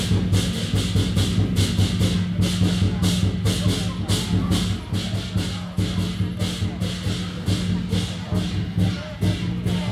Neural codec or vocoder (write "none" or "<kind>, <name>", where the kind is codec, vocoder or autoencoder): none